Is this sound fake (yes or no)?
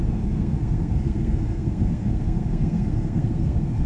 yes